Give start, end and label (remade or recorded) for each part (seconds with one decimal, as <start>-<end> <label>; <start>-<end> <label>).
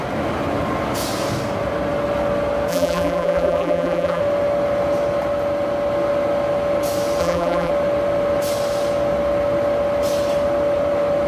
0.0-2.7 recorded; 2.7-4.2 remade; 4.2-7.2 recorded; 7.2-7.7 remade; 7.7-11.3 recorded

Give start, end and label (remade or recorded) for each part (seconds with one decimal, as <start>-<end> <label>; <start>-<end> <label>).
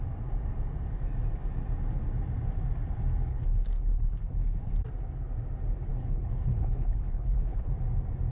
0.0-3.3 recorded; 3.3-4.7 remade; 4.7-5.9 recorded; 5.9-7.7 remade; 7.7-8.3 recorded